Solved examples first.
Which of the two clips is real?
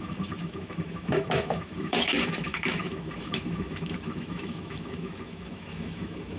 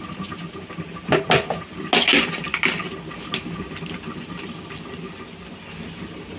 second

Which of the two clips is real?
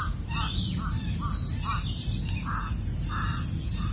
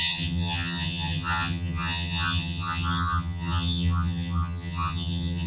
first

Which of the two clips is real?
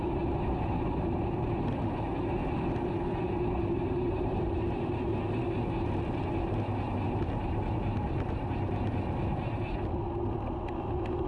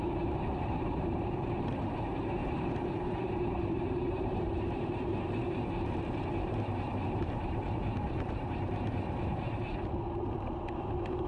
first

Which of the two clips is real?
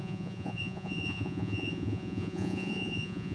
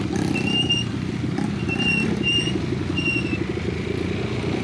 second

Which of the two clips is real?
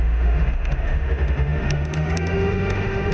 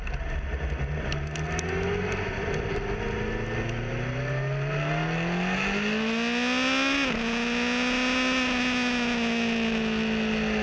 second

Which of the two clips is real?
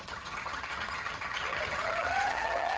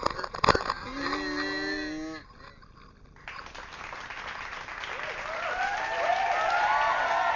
second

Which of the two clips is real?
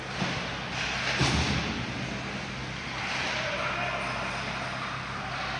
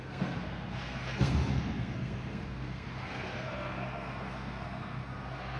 first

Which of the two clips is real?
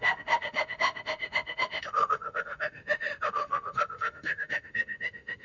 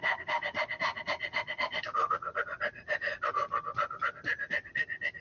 second